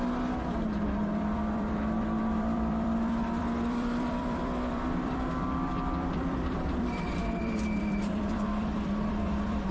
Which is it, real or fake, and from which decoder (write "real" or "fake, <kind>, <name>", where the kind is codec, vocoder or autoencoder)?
fake, vocoder, BigVGAN v2